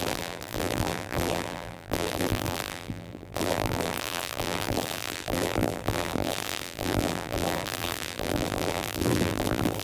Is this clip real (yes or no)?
no